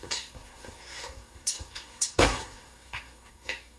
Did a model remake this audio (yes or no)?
yes